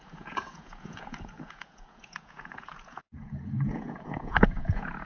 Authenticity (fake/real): fake